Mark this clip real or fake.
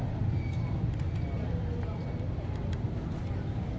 real